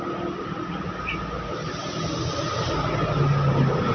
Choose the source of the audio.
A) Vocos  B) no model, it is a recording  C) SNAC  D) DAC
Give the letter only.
B